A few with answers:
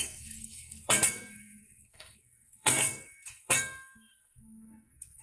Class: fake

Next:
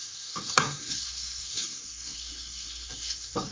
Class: fake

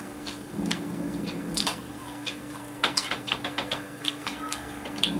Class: fake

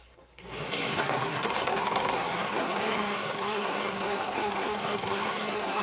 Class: fake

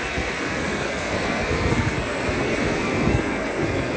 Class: fake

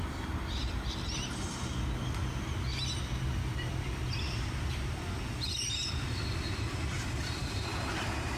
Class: real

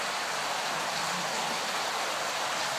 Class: real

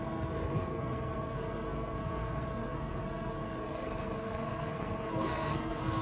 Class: fake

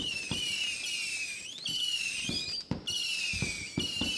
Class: real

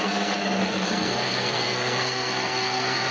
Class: fake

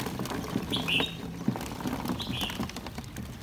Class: real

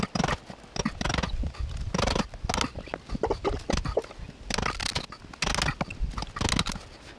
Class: real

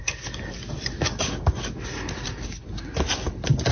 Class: real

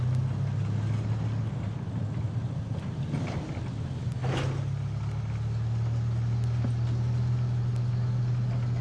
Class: real